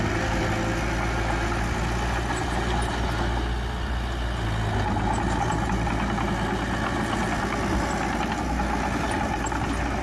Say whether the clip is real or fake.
real